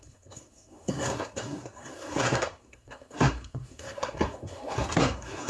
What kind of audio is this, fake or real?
fake